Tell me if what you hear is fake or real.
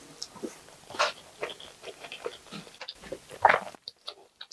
real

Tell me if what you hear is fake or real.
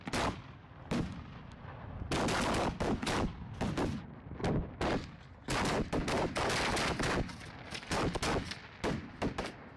real